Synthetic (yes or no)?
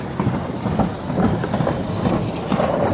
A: no